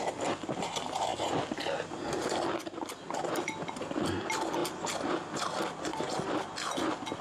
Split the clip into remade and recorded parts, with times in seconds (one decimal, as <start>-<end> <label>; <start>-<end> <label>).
0.0-7.2 recorded